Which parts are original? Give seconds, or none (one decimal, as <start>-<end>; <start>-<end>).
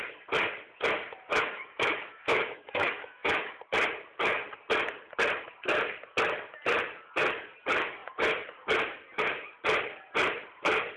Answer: 0.0-1.3; 3.6-11.0